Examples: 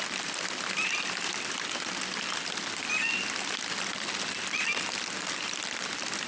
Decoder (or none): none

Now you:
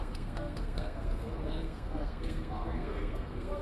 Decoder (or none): codec, SNAC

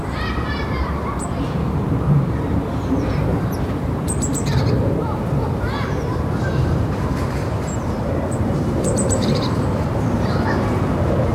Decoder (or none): vocoder, BigVGAN v2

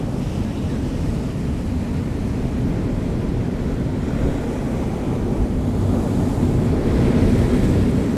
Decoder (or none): none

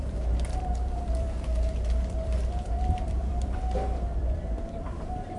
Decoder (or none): vocoder, BigVGAN v2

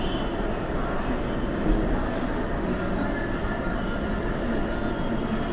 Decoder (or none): none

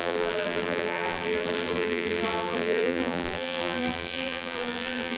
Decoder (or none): vocoder, BigVGAN v2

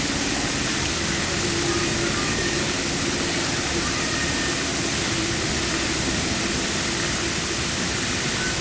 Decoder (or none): none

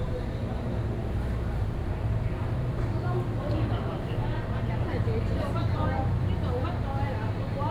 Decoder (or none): vocoder, BigVGAN v2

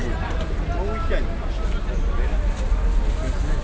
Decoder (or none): none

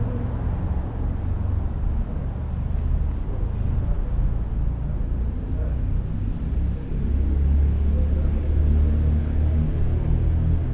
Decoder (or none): none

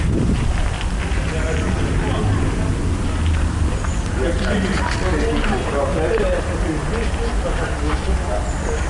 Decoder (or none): none